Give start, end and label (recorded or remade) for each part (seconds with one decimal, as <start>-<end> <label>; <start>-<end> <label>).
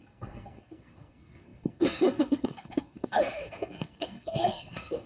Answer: 0.0-5.1 remade